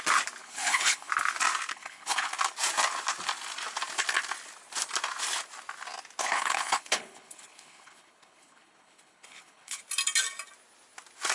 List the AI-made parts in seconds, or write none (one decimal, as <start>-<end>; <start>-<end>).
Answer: 0.4-1.1; 1.7-2.3; 6.2-9.8